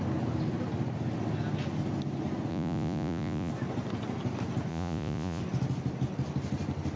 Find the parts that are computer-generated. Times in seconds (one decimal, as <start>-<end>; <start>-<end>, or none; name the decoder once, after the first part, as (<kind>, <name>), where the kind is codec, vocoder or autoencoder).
2.5-3.5 (vocoder, Vocos); 4.7-5.4